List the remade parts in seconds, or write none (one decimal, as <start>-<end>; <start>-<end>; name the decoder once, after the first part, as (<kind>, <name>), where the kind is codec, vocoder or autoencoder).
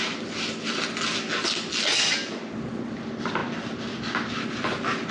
1.9-2.4 (vocoder, BigVGAN v2)